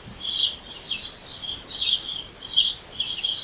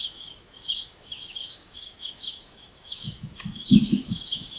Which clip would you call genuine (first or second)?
first